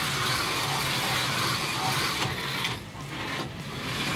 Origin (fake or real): real